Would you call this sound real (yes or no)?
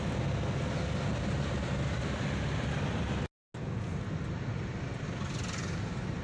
yes